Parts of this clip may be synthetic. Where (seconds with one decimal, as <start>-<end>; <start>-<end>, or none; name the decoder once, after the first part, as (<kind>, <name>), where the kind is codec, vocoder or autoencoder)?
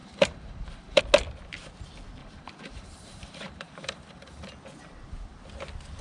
0.0-1.0 (vocoder, BigVGAN v2); 2.2-4.5